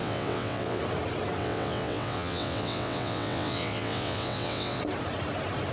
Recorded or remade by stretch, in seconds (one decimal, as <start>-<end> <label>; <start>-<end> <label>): 0.0-0.8 remade; 0.8-1.4 recorded; 1.4-4.8 remade; 4.8-5.7 recorded